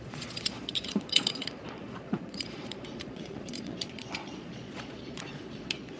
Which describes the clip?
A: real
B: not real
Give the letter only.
B